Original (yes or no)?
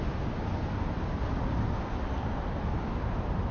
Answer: yes